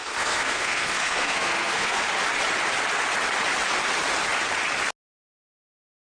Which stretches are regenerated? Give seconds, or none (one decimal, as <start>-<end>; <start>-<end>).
0.0-2.0